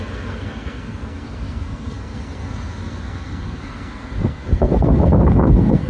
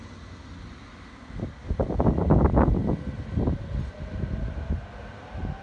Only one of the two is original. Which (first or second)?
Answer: second